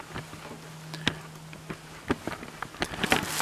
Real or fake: real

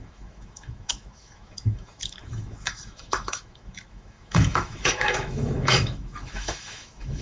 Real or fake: fake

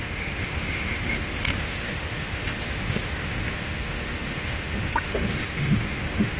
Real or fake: fake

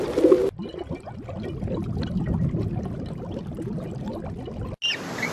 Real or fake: real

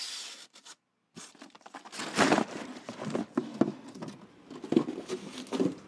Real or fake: real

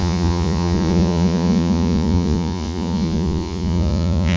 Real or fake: fake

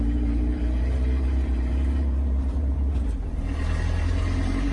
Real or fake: fake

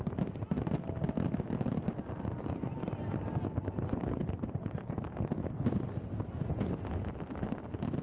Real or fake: real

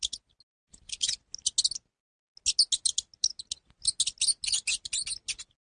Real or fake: real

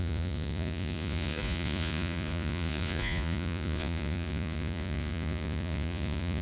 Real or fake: fake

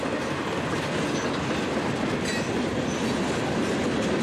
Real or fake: real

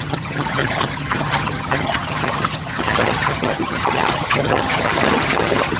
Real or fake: fake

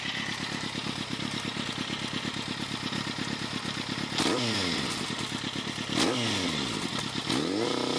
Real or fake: real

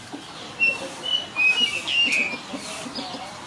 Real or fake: real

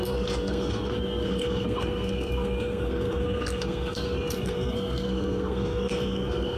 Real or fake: fake